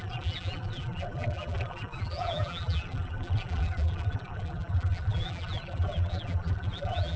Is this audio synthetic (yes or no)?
yes